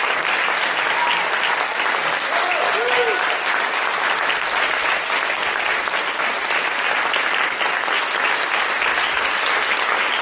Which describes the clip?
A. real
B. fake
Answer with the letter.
A